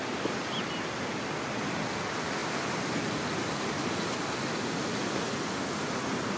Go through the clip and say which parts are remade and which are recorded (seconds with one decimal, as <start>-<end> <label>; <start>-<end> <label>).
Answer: 0.0-6.4 recorded